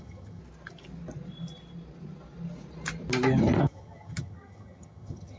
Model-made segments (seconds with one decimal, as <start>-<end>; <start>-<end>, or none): 0.0-0.4; 3.6-5.4